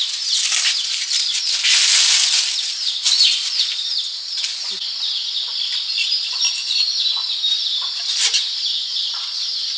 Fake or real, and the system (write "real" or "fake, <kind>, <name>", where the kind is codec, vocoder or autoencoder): real